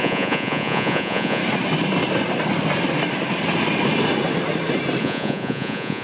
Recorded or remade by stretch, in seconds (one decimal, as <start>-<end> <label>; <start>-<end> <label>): 0.0-1.4 remade; 1.4-5.0 recorded; 5.0-6.0 remade